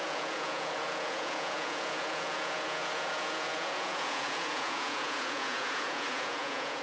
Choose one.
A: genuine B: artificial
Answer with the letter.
B